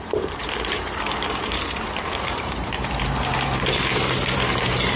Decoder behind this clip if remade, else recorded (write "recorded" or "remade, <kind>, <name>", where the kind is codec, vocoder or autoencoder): remade, vocoder, BigVGAN v2